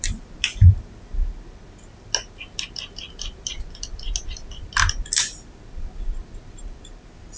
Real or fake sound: real